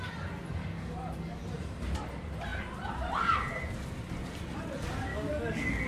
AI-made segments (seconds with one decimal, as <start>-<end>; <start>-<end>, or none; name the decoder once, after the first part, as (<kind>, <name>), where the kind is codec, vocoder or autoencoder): 0.6-1.4 (codec, DAC); 5.1-5.9